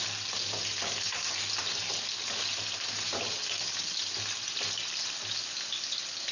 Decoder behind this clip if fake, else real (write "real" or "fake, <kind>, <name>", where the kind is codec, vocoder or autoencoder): real